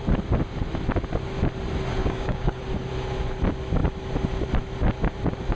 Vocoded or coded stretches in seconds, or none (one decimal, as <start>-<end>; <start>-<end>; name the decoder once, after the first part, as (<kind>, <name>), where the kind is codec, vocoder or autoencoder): 2.0-2.6 (codec, DAC)